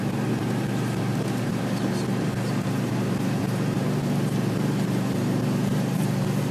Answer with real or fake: fake